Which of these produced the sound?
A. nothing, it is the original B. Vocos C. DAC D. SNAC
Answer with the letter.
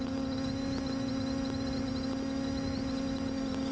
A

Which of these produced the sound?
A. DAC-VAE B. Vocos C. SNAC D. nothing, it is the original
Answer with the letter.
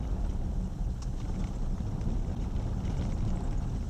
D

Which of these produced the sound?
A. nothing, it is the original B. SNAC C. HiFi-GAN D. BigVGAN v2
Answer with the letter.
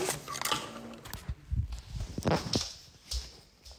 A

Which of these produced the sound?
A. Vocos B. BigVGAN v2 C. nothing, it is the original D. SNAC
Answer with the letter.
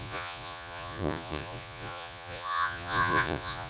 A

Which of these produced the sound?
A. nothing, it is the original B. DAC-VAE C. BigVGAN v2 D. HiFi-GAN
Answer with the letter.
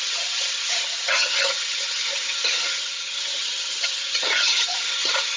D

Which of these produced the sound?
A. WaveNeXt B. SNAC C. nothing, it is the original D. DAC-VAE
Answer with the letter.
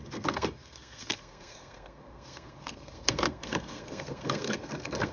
B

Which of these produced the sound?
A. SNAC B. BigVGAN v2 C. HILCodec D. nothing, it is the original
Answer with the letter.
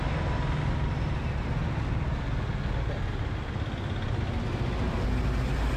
D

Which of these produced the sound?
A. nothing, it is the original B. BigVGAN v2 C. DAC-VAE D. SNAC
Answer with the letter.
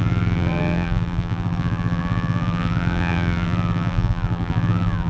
B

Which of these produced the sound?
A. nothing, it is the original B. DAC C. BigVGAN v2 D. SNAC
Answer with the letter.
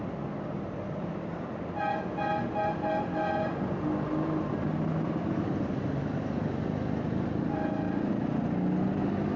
A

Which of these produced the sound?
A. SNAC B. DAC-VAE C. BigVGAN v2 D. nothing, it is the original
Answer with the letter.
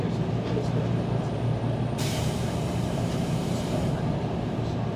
C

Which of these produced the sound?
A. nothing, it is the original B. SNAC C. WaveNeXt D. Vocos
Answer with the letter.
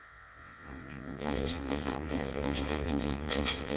C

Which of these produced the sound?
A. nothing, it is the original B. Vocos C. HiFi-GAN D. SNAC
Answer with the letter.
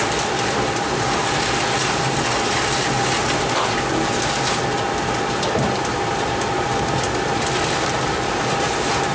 A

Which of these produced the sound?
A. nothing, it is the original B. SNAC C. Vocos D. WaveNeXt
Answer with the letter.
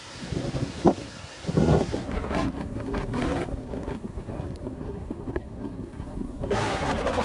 B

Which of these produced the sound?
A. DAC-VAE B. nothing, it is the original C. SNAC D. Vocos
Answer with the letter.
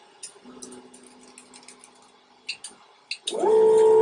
B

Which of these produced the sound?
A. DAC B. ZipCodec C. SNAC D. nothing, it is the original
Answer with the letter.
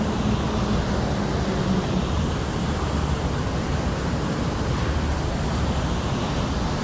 D